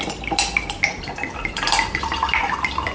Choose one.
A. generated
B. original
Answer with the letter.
B